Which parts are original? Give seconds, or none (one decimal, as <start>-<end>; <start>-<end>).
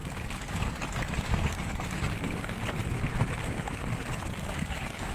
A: 2.8-3.5